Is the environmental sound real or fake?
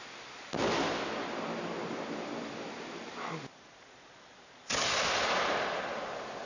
real